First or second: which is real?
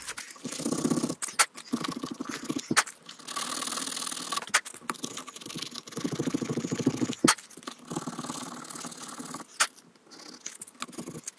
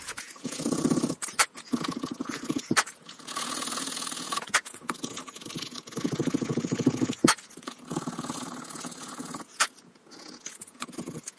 first